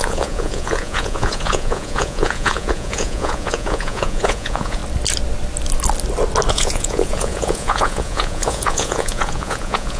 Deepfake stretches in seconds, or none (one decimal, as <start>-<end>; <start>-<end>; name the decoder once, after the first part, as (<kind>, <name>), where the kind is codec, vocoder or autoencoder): 0.0-4.8 (vocoder, Vocos); 6.5-10.0